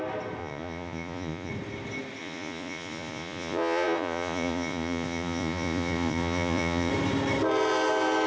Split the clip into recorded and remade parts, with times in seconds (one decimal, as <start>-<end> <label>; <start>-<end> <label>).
0.0-0.4 recorded; 0.4-1.5 remade; 1.5-2.2 recorded; 2.2-6.9 remade; 6.9-8.3 recorded